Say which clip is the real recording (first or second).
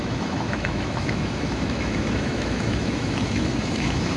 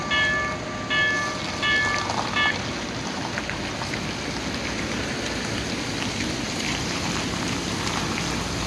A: second